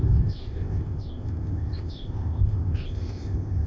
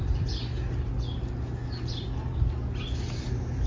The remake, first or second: first